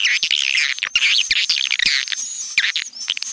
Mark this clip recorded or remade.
recorded